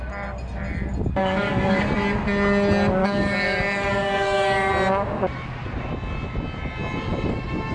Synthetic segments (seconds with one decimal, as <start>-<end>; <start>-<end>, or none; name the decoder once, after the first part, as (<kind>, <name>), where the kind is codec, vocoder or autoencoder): 1.2-1.8 (codec, DAC); 3.0-4.7